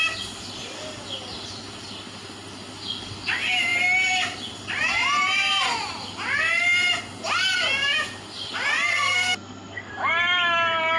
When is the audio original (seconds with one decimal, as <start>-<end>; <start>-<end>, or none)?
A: 0.0-8.9; 9.9-11.0